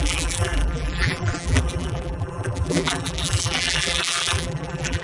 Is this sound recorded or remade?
remade